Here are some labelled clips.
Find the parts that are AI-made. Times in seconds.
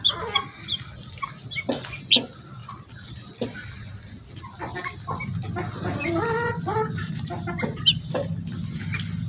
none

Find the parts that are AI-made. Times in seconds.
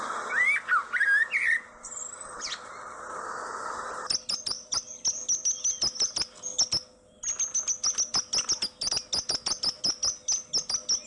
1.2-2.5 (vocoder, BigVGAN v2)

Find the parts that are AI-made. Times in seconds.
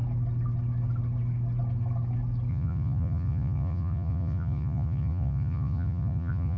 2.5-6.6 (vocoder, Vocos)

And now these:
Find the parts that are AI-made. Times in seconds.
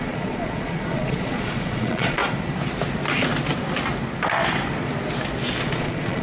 0.0-2.2 (vocoder, Vocos); 5.6-6.2